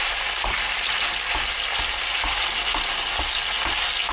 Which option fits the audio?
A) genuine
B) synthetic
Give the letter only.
A